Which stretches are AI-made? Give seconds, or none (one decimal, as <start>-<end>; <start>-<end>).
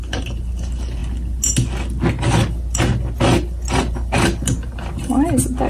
none